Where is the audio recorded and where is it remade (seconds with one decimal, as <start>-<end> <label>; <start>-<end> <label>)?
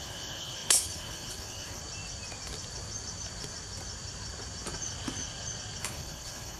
0.0-1.8 remade; 1.8-5.8 recorded; 5.8-6.6 remade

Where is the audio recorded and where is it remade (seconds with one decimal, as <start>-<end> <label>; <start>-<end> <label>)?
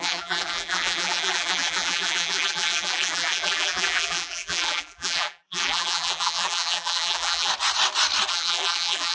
0.0-7.5 remade; 7.5-8.3 recorded; 8.3-9.1 remade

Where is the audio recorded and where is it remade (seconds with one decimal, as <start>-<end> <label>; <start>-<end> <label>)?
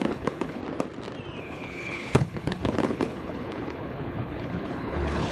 0.0-0.6 remade; 0.6-1.4 recorded; 1.4-5.3 remade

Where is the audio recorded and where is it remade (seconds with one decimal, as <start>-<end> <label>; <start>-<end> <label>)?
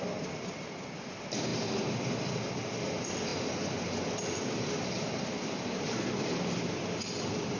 0.0-7.6 recorded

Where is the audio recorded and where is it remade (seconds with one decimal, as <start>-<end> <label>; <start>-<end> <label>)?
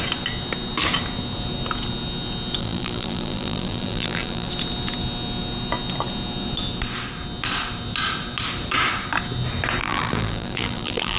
0.0-2.6 recorded; 2.6-4.5 remade; 4.5-9.8 recorded; 9.8-11.2 remade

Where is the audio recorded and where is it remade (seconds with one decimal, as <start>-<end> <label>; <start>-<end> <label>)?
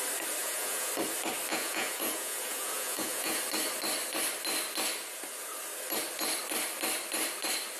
0.0-0.4 recorded; 0.4-0.9 remade; 0.9-1.5 recorded; 1.5-3.4 remade; 3.4-7.8 recorded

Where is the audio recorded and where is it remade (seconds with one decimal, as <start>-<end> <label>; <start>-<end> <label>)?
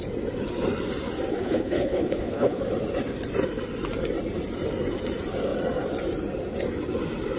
0.0-1.3 recorded; 1.3-2.6 remade; 2.6-7.4 recorded